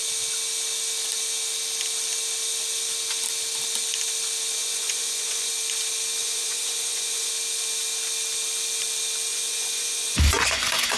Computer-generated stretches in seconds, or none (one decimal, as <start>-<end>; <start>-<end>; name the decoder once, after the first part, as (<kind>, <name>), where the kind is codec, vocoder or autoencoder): 4.6-5.5 (vocoder, Vocos); 6.2-7.3; 9.3-11.0